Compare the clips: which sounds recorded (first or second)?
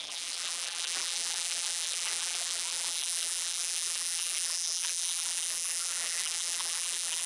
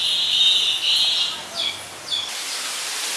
second